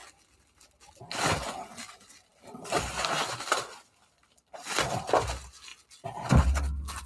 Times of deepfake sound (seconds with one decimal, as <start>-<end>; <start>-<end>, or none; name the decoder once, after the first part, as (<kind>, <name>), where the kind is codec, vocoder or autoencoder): 2.3-4.6 (vocoder, BigVGAN v2)